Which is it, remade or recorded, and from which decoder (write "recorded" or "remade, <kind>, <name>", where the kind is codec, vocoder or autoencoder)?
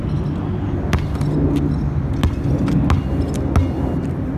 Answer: recorded